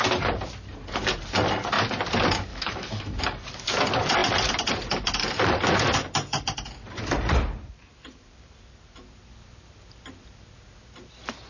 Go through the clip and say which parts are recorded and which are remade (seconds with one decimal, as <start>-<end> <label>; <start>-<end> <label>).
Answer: 0.0-2.5 recorded; 2.5-3.2 remade; 3.2-11.5 recorded